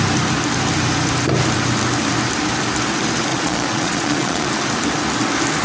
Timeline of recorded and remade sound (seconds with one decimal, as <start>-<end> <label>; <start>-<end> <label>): 0.0-3.3 recorded; 3.3-4.5 remade; 4.5-5.6 recorded